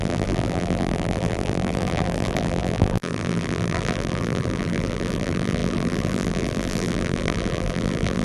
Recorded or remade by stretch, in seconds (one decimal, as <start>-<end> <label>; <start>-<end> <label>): 0.0-8.2 remade